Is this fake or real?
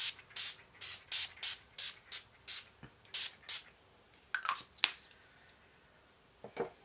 real